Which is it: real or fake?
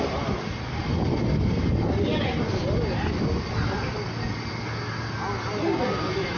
real